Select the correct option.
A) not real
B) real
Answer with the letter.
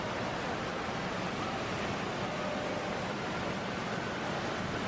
B